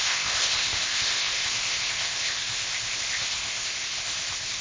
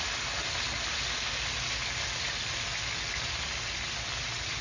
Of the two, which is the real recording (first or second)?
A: second